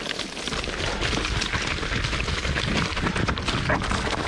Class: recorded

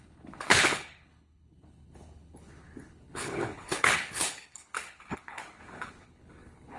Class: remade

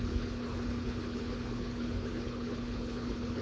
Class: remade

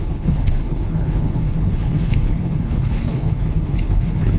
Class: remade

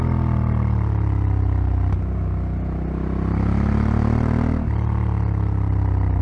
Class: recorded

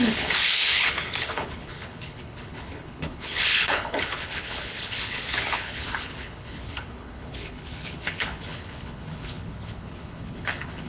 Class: remade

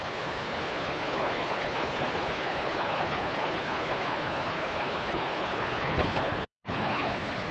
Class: remade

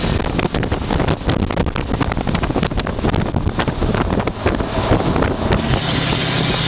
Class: recorded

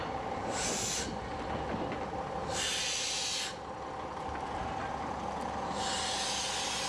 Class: recorded